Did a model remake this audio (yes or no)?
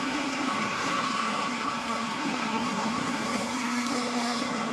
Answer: yes